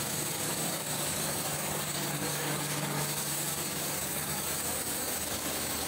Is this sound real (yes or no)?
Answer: no